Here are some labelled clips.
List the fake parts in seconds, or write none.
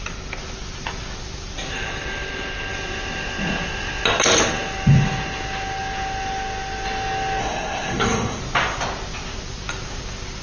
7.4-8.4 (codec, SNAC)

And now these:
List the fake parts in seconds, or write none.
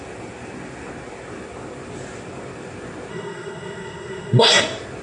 3.1-4.6 (codec, SNAC)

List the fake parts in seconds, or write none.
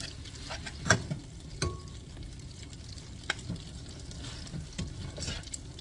none